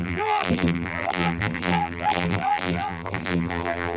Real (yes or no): no